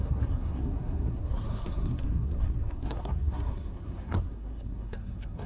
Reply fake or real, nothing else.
fake